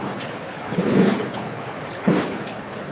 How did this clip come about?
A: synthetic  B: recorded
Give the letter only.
A